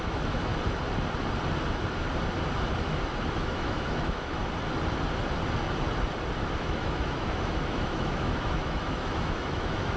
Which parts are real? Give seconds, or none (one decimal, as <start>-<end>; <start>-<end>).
0.5-3.4; 4.4-6.4